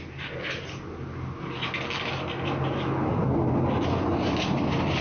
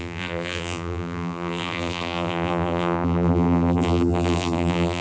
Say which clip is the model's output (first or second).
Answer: second